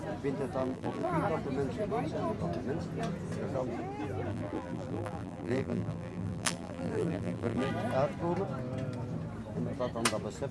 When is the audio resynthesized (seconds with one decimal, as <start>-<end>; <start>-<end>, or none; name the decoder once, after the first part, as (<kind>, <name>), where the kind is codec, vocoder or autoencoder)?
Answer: 0.6-1.1 (vocoder, BigVGAN v2); 4.3-7.7